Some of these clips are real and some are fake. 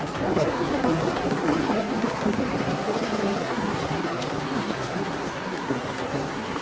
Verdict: fake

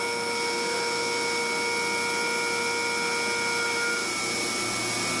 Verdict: real